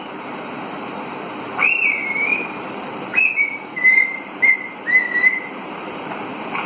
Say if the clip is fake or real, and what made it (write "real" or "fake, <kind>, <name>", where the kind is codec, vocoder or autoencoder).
fake, vocoder, BigVGAN v2